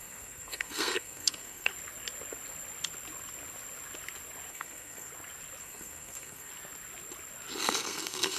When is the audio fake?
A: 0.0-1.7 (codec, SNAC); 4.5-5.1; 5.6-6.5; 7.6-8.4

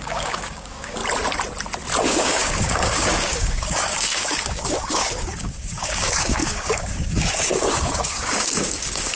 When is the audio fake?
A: 0.0-1.0 (codec, DAC); 2.0-9.2